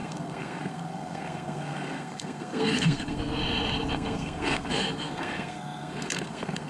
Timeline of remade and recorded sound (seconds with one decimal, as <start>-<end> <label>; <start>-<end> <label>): 0.0-3.4 remade; 3.4-3.9 recorded; 3.9-6.7 remade